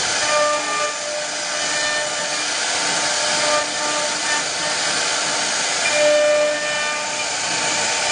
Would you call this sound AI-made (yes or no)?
no